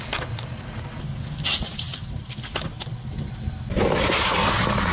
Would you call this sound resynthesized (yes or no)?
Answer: no